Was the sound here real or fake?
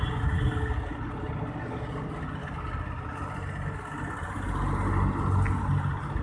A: real